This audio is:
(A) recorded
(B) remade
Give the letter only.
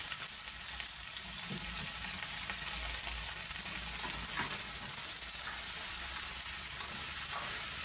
A